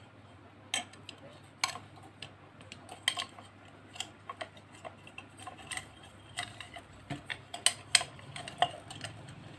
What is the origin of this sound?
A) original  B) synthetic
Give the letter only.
A